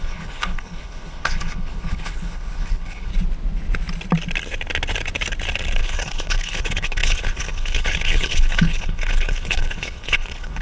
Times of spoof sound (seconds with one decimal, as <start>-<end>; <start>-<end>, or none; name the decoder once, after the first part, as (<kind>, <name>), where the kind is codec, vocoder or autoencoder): 0.0-3.1 (codec, HILCodec); 5.8-10.6